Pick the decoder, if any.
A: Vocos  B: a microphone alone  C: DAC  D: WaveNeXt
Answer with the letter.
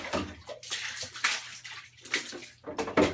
B